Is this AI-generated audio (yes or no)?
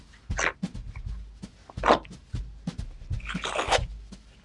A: no